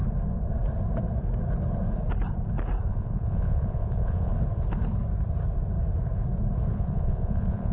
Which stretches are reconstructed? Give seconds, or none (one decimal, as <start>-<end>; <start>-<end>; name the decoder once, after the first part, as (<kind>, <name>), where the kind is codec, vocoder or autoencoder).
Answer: 2.9-4.3 (vocoder, Vocos); 6.7-7.7